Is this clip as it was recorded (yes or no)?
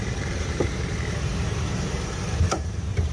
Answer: no